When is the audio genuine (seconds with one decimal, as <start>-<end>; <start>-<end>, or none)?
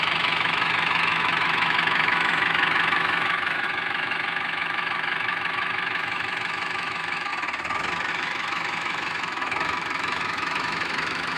7.3-8.1